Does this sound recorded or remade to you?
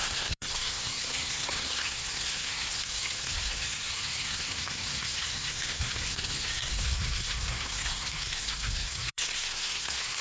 remade